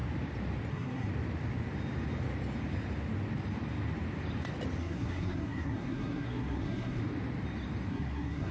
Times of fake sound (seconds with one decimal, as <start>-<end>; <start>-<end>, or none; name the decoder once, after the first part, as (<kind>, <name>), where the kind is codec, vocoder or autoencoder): 0.7-1.1 (codec, SNAC); 4.8-7.0; 7.9-8.5